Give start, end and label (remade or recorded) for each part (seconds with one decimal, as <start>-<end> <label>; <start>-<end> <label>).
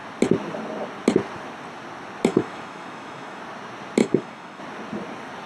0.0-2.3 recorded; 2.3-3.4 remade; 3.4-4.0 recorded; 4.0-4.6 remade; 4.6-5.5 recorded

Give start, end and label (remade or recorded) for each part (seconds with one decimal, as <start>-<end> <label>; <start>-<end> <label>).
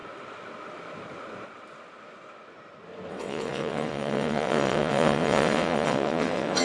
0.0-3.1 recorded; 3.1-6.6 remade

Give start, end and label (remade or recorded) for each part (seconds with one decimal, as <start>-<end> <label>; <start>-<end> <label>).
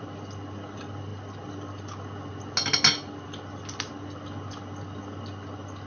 0.0-5.9 recorded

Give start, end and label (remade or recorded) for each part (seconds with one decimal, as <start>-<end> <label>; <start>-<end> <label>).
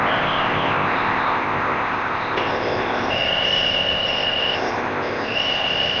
0.0-6.0 remade